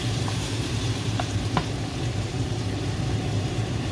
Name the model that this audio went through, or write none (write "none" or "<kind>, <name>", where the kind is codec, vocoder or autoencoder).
vocoder, BigVGAN v2